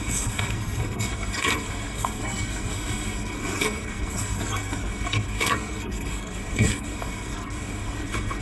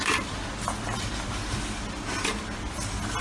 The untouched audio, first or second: second